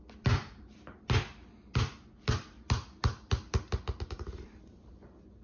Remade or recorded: recorded